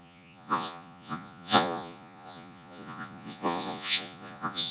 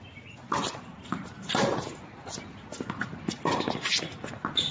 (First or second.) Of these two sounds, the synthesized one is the first